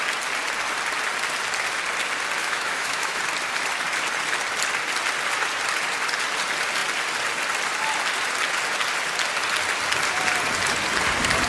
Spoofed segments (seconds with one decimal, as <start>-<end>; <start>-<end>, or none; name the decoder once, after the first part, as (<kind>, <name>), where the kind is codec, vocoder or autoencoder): 2.4-3.2 (autoencoder, DAC-VAE)